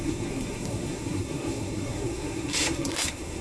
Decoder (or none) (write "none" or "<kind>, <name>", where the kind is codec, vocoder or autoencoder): codec, SNAC